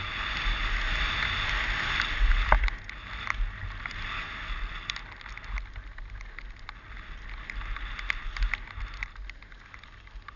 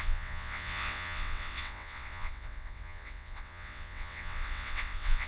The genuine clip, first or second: first